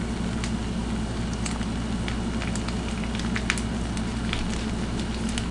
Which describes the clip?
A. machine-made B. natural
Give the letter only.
B